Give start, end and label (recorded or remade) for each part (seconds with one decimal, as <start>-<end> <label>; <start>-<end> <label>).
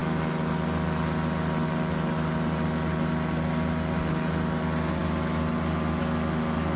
0.0-6.8 recorded